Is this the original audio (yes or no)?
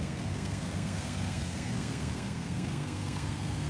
no